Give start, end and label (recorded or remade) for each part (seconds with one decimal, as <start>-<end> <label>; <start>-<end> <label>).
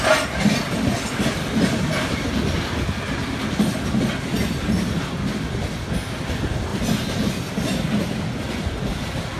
0.0-9.4 recorded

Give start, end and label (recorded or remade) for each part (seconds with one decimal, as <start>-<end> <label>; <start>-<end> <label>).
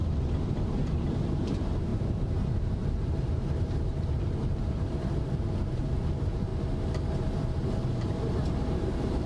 0.0-6.5 remade; 6.5-7.1 recorded; 7.1-9.3 remade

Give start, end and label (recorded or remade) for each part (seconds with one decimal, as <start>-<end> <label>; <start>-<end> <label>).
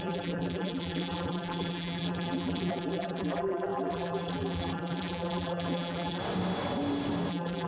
0.0-6.2 remade; 6.2-7.3 recorded; 7.3-7.7 remade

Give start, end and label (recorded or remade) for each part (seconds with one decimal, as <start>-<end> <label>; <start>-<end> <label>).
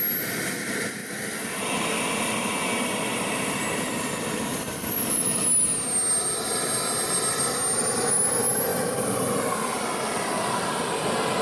0.0-1.0 recorded; 1.0-1.6 remade; 1.6-4.5 recorded; 4.5-5.2 remade; 5.2-8.7 recorded; 8.7-9.3 remade; 9.3-11.4 recorded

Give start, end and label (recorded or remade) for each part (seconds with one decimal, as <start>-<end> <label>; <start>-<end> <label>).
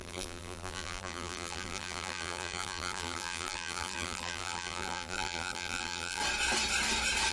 0.0-6.2 remade; 6.2-7.3 recorded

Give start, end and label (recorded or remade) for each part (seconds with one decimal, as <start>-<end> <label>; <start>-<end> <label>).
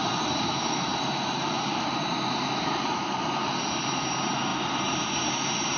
0.0-5.8 remade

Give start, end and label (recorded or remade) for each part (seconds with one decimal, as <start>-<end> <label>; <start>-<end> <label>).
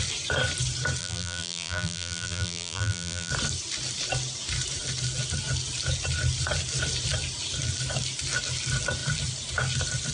0.0-1.0 recorded; 1.0-3.3 remade; 3.3-10.1 recorded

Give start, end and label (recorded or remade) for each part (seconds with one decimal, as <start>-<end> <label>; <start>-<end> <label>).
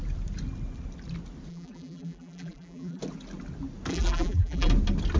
0.0-1.5 recorded; 1.5-3.0 remade; 3.0-3.9 recorded; 3.9-4.7 remade; 4.7-5.2 recorded